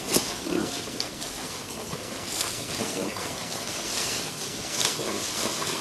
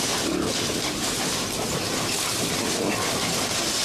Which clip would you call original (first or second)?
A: second